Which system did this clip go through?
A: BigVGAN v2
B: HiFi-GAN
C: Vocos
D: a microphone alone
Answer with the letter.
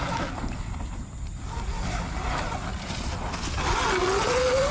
D